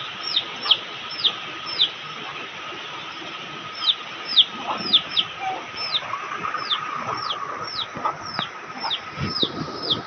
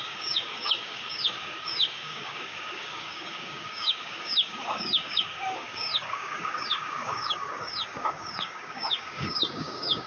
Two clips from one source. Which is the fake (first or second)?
second